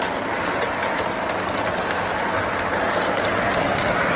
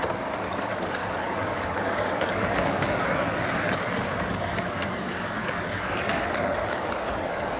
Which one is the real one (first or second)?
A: first